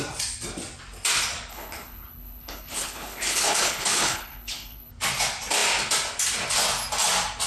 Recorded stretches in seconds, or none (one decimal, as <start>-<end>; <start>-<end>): 0.0-1.5; 4.9-7.5

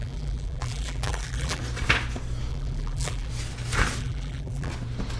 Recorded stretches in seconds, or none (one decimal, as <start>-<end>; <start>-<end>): 1.6-2.5; 3.3-4.0; 4.7-5.2

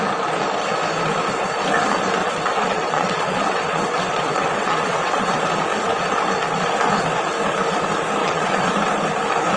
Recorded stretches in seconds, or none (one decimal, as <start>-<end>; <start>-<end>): 0.0-2.2; 5.4-8.2; 8.7-9.6

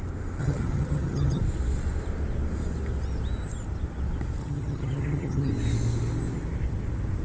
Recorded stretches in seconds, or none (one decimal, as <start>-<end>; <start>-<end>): 0.0-0.4; 1.4-4.4; 5.5-7.2

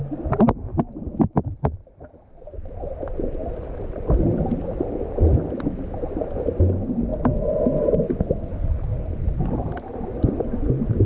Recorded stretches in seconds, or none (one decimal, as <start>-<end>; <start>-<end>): 0.0-1.8; 2.7-11.1

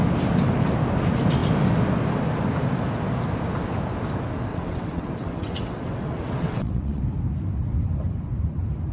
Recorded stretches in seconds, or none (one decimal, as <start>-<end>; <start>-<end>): 0.0-4.5; 7.0-8.9

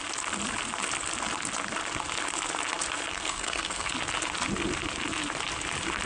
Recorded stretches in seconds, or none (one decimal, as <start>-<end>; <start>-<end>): 0.0-3.1; 3.9-6.1

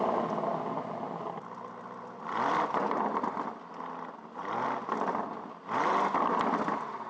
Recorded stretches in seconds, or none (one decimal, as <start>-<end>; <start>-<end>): 0.0-0.5; 3.6-7.1